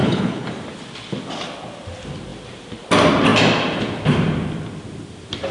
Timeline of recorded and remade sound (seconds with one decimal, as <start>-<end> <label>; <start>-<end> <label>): 0.0-0.5 remade; 0.5-5.5 recorded

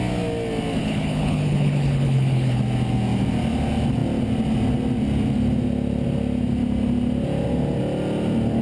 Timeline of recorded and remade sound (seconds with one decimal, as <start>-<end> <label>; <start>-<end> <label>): 0.0-0.8 recorded; 0.8-2.6 remade; 2.6-8.6 recorded